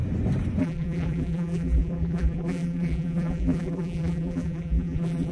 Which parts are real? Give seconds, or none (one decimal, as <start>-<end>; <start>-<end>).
0.0-0.6